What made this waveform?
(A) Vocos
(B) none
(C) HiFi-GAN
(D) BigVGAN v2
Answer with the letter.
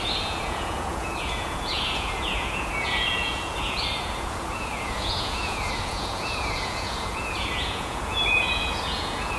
A